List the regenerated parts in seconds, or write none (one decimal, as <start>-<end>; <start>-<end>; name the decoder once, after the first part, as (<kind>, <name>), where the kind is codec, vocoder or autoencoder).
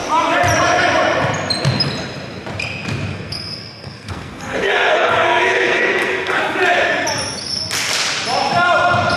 3.1-6.4 (codec, SNAC)